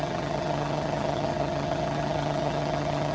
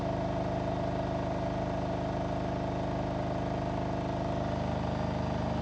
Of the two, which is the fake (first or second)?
first